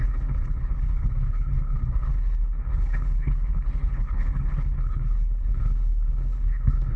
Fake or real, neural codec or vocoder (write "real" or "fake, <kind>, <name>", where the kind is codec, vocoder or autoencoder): fake, codec, HILCodec